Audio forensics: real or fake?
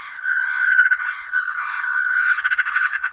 fake